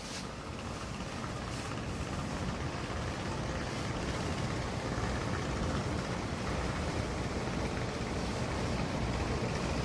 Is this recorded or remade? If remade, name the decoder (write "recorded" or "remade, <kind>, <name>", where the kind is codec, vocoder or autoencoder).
remade, vocoder, BigVGAN v2